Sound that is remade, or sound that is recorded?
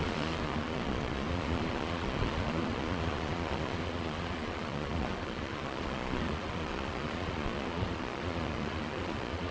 remade